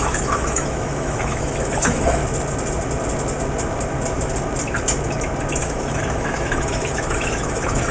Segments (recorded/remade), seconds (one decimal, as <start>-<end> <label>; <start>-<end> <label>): 0.0-2.2 remade; 2.2-5.5 recorded; 5.5-7.9 remade